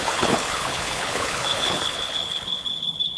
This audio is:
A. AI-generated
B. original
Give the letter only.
A